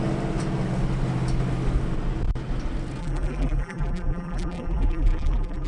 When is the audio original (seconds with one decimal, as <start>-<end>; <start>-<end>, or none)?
0.0-3.0